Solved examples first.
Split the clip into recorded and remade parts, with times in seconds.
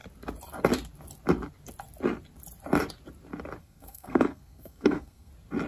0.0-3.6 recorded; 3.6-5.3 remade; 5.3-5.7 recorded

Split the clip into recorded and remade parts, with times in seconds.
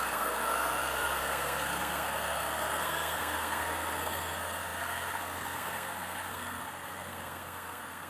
0.0-8.1 remade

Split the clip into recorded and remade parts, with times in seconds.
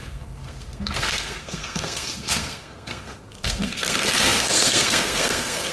0.0-5.7 remade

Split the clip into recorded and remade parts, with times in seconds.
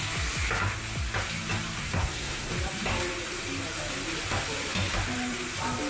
0.0-1.8 recorded; 1.8-2.5 remade; 2.5-5.9 recorded